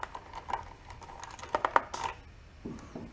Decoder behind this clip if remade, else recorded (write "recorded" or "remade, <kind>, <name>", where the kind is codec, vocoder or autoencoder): recorded